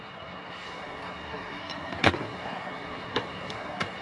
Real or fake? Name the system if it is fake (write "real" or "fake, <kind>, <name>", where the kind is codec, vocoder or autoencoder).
fake, codec, SNAC